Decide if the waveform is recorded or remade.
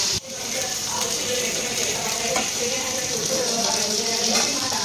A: remade